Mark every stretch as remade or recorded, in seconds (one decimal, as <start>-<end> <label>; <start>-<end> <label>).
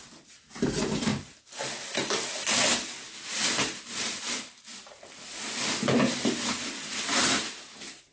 0.0-8.1 recorded